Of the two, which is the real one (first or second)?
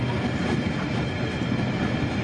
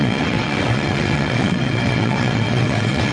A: first